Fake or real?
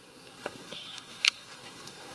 fake